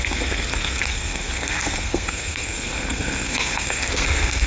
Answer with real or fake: fake